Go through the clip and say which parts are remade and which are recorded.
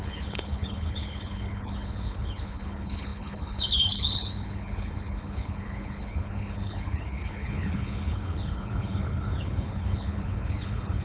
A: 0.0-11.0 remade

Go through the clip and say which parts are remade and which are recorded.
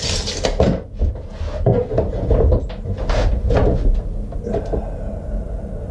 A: 0.0-5.9 recorded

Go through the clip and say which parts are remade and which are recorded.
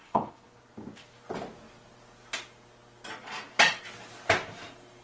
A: 0.0-0.6 remade; 0.6-5.0 recorded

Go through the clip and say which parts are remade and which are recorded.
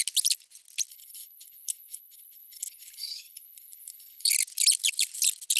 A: 0.0-0.9 recorded; 0.9-4.3 remade; 4.3-5.6 recorded